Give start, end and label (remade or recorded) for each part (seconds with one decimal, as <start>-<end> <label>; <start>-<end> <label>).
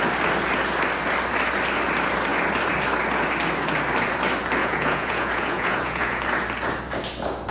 0.0-4.6 recorded; 4.6-6.2 remade; 6.2-7.5 recorded